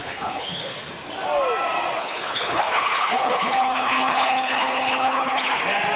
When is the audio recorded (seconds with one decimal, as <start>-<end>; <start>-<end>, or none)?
0.9-2.0; 5.6-6.0